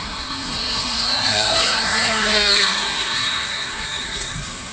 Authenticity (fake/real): fake